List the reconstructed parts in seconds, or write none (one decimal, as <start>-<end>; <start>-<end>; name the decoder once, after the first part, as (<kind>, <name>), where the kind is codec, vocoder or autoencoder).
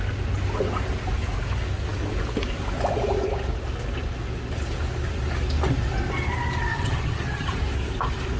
6.7-7.6 (vocoder, HiFi-GAN)